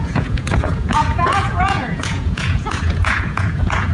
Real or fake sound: fake